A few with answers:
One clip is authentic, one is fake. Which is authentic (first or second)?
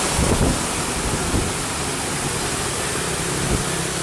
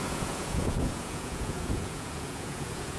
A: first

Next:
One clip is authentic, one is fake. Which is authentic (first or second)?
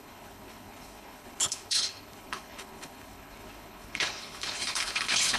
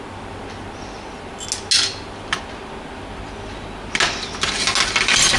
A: second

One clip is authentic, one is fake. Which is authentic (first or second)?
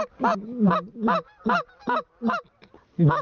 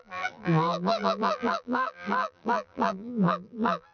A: first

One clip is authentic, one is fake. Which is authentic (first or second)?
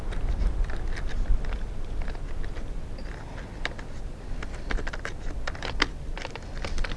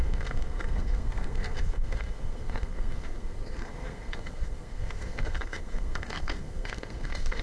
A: first